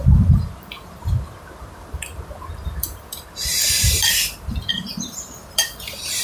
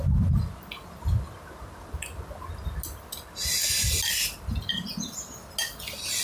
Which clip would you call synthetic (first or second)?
first